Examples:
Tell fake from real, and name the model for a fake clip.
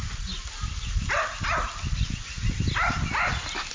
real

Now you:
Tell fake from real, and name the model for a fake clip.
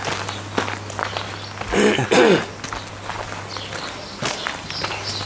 real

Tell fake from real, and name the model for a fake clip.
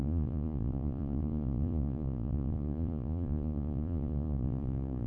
fake, vocoder, Vocos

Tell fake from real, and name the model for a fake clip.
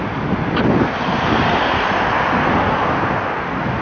real